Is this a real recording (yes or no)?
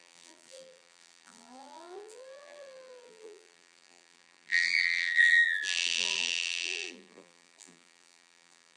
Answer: no